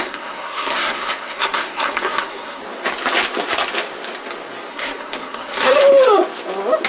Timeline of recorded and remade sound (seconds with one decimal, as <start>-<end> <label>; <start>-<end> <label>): 0.0-2.6 remade; 2.6-4.7 recorded; 4.7-5.8 remade; 5.8-6.9 recorded